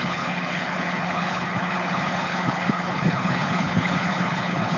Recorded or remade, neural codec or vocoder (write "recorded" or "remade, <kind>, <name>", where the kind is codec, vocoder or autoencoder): remade, codec, HILCodec